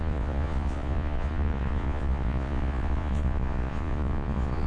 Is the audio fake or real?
fake